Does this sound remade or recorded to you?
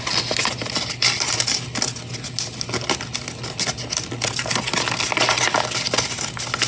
recorded